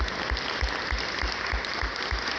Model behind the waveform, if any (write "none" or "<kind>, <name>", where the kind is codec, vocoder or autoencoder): none